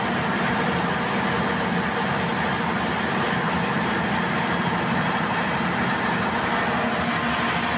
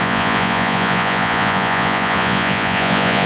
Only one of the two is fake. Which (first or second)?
second